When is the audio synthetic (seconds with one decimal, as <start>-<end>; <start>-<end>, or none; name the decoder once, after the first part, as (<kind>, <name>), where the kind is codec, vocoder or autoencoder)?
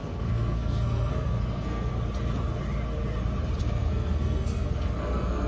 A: 0.0-1.9 (codec, SNAC); 3.6-5.5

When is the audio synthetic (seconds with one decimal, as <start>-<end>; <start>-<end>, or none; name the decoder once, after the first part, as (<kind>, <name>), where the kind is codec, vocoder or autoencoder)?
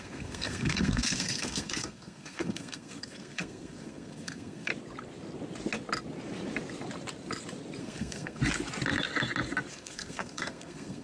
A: 0.0-4.7 (codec, SNAC); 7.8-8.4; 9.7-11.0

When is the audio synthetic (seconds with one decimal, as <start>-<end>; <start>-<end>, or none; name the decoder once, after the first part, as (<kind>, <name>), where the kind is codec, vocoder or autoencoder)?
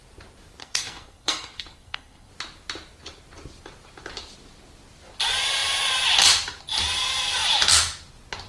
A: 0.6-2.3 (codec, SNAC)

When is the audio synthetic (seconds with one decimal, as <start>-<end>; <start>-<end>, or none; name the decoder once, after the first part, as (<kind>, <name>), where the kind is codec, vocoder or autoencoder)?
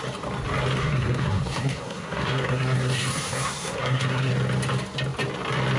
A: 0.8-4.3 (codec, SNAC)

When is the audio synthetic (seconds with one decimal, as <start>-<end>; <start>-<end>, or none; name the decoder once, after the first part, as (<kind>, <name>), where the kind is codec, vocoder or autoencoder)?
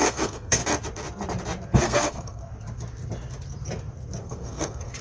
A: 0.0-0.6 (codec, SNAC); 1.8-2.4; 4.2-5.0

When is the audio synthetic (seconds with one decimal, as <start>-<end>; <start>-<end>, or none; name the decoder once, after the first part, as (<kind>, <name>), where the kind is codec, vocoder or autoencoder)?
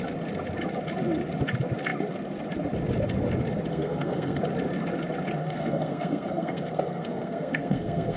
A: 3.7-4.4 (codec, SNAC); 5.4-8.2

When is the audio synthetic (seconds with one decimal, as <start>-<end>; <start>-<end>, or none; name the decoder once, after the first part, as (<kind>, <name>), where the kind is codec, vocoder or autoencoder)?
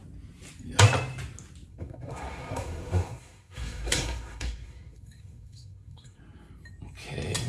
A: 1.7-6.2 (codec, SNAC)